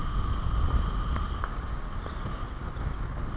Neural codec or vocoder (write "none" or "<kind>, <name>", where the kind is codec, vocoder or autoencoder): none